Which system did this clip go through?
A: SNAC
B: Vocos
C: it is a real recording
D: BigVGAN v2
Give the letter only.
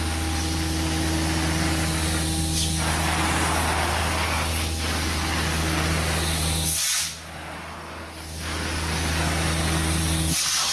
C